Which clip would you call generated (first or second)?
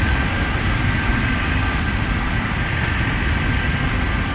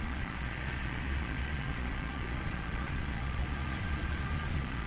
second